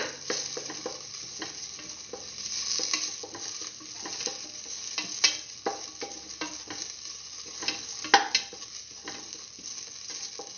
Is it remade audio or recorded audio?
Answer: recorded